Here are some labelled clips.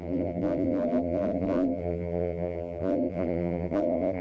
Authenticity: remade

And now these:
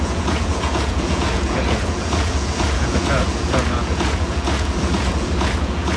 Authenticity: remade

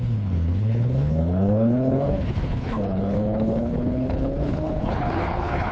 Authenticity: remade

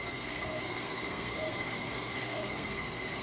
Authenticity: remade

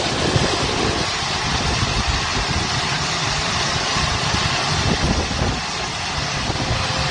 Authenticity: recorded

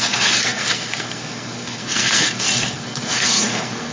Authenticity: remade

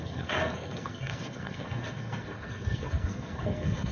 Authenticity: remade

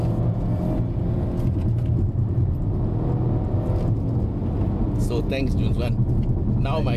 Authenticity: recorded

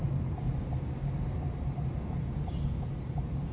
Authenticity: recorded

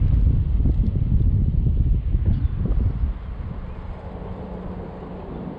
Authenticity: recorded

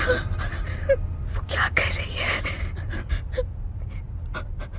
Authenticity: recorded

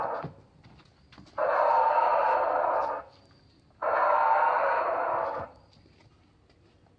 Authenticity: recorded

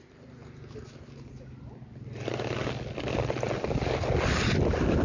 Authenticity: recorded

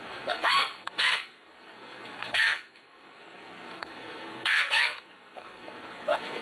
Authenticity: remade